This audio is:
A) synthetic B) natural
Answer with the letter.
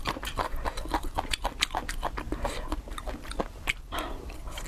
B